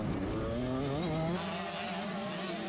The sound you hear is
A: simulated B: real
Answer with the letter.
B